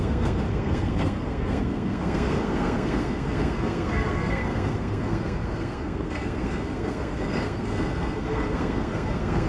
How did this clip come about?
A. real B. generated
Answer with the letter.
B